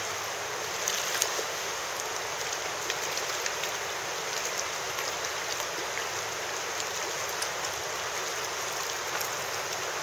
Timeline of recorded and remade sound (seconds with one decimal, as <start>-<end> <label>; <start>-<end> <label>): 0.0-1.3 recorded; 1.3-1.9 remade; 1.9-10.0 recorded